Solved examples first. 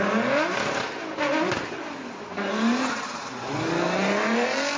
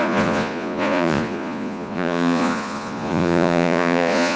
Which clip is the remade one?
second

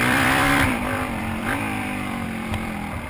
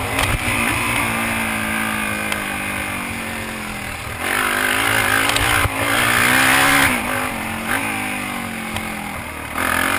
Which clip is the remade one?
first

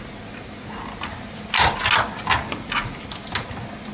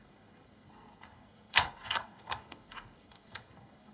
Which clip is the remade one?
second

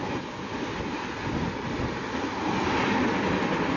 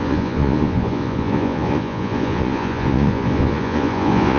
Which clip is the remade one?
second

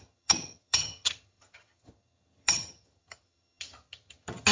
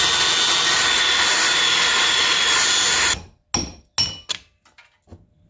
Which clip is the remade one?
first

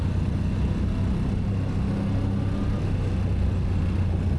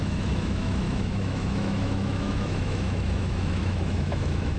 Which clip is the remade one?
second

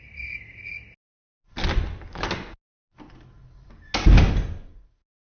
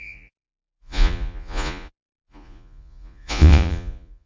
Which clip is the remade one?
second